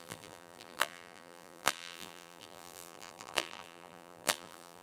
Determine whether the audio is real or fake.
fake